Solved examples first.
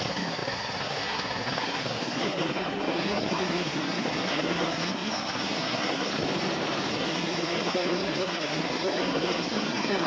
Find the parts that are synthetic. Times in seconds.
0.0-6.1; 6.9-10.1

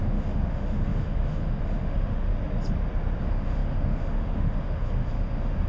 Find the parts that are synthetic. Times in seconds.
0.0-2.3; 3.2-5.7

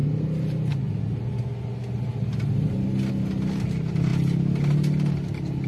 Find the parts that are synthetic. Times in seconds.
none